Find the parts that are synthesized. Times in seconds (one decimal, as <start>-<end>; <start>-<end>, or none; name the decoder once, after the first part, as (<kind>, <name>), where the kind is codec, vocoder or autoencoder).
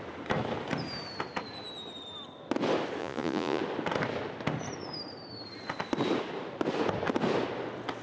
3.0-3.6 (vocoder, Vocos)